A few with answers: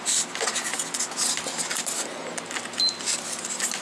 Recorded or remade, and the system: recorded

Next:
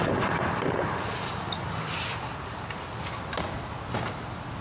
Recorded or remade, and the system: recorded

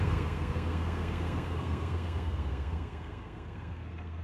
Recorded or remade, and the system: remade, codec, SNAC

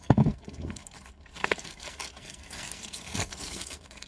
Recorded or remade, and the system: remade, codec, SNAC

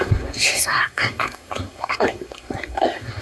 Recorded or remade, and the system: remade, codec, SNAC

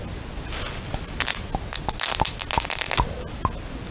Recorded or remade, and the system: recorded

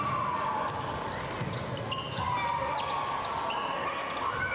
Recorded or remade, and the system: recorded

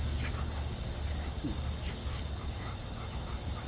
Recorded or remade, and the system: recorded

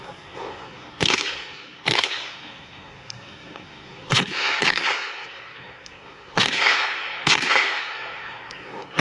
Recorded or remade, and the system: remade, codec, SNAC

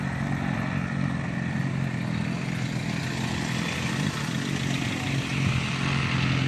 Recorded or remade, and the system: recorded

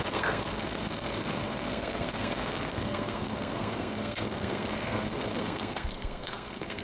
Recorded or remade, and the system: remade, codec, SNAC